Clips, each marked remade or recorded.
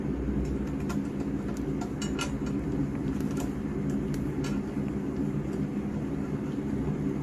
recorded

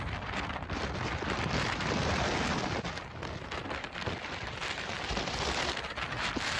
remade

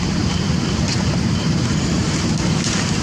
remade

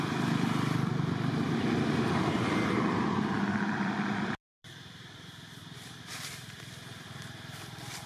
remade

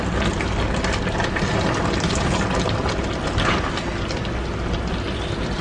recorded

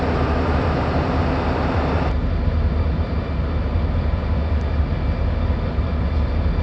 recorded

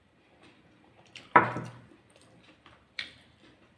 remade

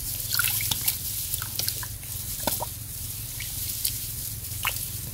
recorded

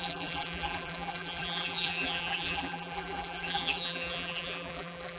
remade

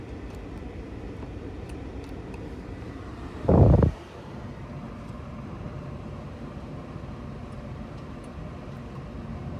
remade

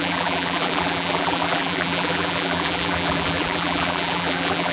remade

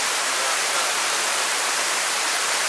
remade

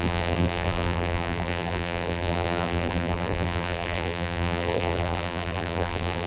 remade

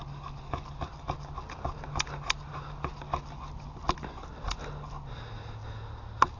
recorded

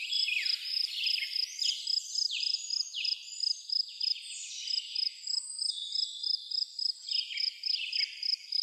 remade